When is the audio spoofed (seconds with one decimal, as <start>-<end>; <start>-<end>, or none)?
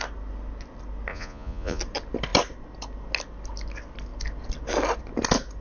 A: 1.1-1.8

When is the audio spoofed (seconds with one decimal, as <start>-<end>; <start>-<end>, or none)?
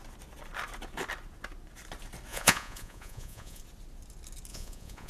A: 2.3-3.6; 4.5-5.1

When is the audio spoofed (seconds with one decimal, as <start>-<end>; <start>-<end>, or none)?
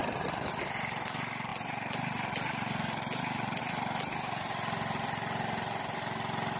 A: none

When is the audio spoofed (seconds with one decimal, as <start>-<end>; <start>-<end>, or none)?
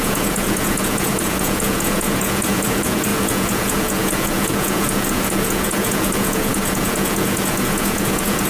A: 0.0-8.5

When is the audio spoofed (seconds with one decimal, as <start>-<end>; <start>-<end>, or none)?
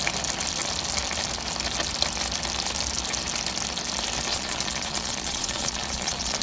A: 4.3-6.4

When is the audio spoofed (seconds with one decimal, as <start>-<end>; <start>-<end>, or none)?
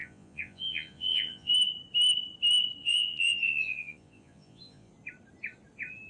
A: 0.0-1.5; 2.8-4.9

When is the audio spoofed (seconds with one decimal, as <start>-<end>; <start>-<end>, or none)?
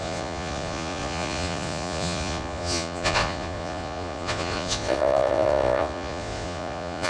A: 0.0-7.1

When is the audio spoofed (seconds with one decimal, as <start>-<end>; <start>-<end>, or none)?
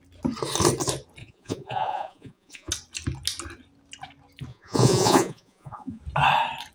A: 1.2-2.7; 4.5-6.0